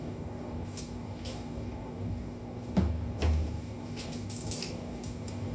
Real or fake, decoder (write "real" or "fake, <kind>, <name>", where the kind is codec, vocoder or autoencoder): fake, codec, DAC